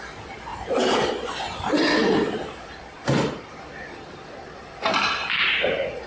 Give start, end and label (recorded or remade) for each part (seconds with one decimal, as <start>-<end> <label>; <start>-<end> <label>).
0.0-0.5 recorded; 0.5-1.3 remade; 1.3-2.0 recorded; 2.0-4.3 remade; 4.3-6.1 recorded